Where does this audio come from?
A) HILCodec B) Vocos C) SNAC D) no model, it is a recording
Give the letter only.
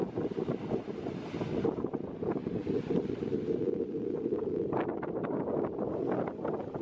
D